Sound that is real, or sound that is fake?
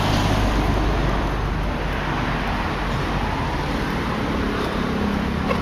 real